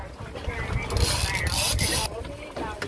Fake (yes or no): yes